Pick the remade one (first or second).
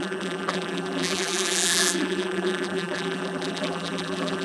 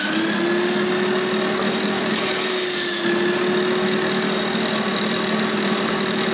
first